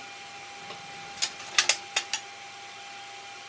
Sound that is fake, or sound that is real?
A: real